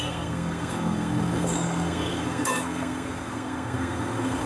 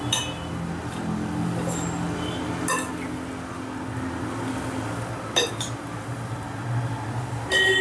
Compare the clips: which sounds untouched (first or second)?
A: second